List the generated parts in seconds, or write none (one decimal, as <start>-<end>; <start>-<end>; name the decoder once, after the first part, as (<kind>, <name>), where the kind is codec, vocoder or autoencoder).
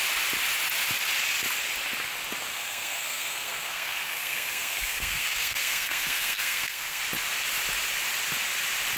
2.5-7.0 (codec, SNAC)